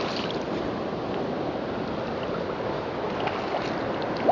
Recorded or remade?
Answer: recorded